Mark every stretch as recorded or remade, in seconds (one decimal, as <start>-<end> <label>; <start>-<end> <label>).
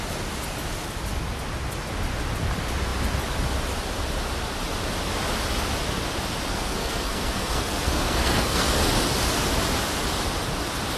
0.0-6.5 recorded; 6.5-8.8 remade; 8.8-11.0 recorded